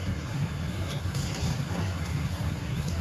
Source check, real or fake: fake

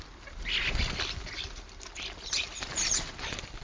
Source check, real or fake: real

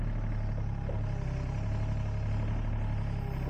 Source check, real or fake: real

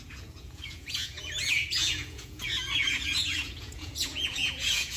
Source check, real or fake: fake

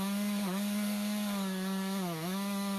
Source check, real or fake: fake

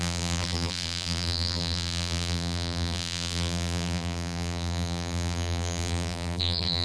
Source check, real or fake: fake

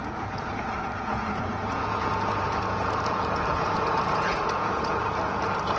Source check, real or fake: fake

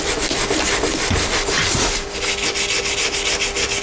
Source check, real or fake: real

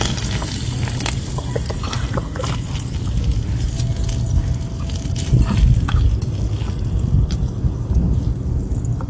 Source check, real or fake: real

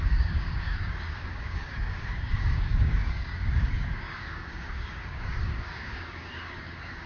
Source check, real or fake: fake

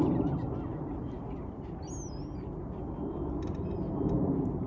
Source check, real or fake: real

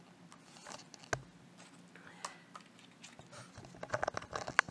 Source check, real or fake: real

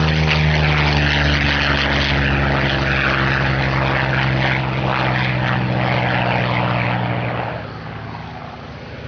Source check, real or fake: real